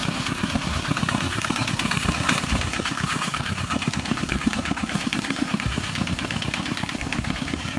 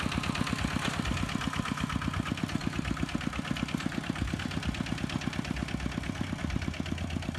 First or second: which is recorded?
second